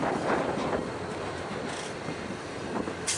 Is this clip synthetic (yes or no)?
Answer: no